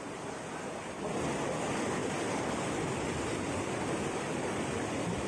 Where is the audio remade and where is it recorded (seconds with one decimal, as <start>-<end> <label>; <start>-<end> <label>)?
0.0-5.3 recorded